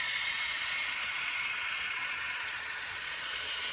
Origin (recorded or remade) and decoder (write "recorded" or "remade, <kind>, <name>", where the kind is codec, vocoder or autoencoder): remade, vocoder, Vocos